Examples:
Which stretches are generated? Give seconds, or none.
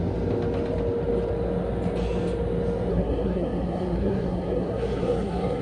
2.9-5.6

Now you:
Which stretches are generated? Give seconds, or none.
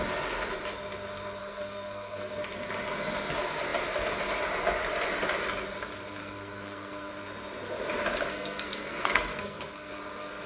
1.4-2.3; 6.2-7.1; 8.3-9.9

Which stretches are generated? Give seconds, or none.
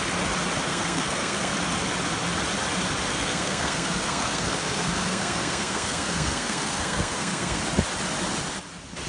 0.7-1.5; 3.1-7.6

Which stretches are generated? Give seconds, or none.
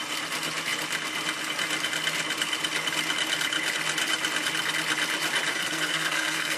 5.5-6.6